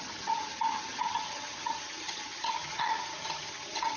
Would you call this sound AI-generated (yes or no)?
yes